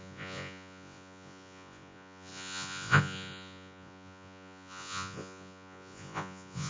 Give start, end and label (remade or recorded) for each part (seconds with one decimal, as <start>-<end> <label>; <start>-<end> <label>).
0.0-6.7 remade

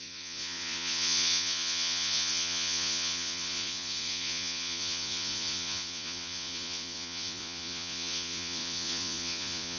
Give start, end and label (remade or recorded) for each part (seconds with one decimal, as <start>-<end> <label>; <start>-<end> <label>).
0.0-9.8 remade